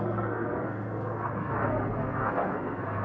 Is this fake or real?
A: fake